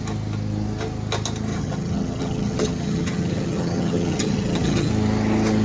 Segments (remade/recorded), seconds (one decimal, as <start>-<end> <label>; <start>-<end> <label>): 0.0-1.5 recorded; 1.5-4.9 remade; 4.9-5.6 recorded